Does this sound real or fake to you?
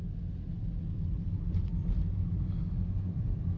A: real